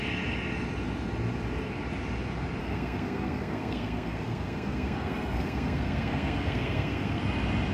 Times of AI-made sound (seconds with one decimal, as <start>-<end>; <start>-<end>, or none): 2.6-7.2